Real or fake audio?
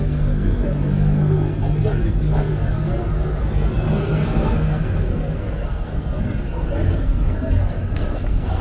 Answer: fake